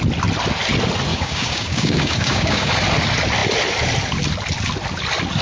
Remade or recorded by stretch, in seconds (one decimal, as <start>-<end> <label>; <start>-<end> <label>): 0.0-1.1 recorded; 1.1-2.7 remade; 2.7-5.4 recorded